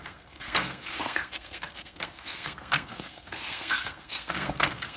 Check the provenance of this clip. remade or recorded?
remade